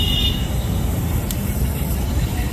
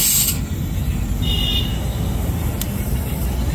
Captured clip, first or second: second